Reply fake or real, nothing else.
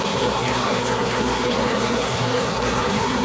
fake